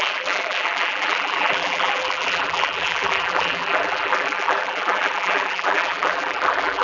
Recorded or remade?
remade